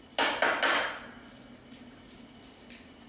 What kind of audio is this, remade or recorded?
recorded